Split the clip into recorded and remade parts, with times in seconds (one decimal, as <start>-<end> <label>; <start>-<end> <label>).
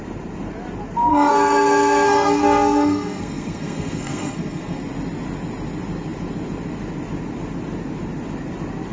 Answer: 0.0-1.1 recorded; 1.1-4.8 remade; 4.8-8.9 recorded